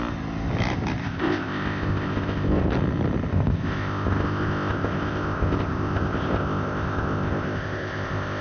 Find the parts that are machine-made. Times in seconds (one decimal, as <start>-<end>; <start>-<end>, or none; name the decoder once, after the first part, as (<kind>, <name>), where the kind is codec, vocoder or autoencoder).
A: 1.0-2.7 (codec, ZipCodec); 3.3-8.4